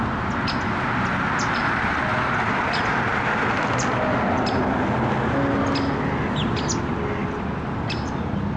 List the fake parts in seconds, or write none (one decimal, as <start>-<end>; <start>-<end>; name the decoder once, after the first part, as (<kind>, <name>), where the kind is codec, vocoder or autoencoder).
none